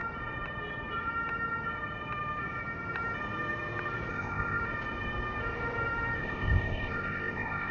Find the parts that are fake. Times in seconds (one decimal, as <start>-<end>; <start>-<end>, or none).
4.1-4.6; 6.2-7.7

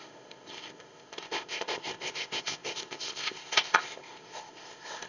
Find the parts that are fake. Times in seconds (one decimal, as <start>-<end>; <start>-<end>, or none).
0.0-5.1

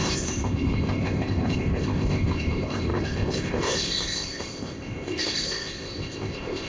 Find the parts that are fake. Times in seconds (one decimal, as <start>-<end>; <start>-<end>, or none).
0.0-6.7

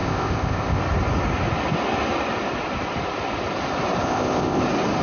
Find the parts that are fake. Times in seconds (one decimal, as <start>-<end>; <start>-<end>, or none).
0.0-0.8; 4.0-4.6